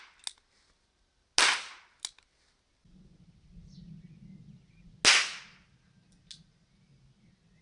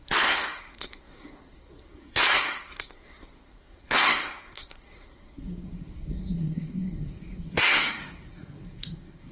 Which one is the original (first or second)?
first